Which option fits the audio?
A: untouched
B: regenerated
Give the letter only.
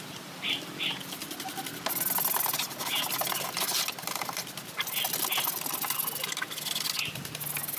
A